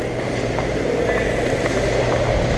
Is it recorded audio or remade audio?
recorded